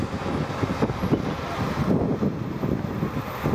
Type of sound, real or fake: real